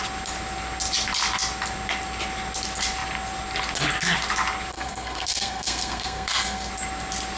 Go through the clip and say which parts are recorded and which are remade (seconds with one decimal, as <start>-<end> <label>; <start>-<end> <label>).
0.0-4.7 recorded; 4.7-6.7 remade; 6.7-7.4 recorded